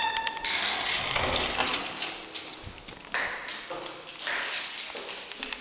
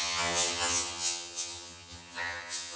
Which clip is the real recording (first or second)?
first